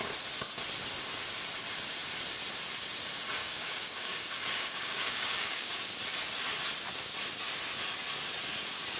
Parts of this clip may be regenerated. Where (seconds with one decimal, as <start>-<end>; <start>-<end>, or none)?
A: 3.4-5.7